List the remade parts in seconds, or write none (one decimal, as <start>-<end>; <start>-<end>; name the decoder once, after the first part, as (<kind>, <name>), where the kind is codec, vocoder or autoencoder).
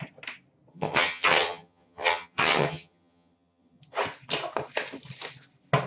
0.7-3.8 (vocoder, HiFi-GAN)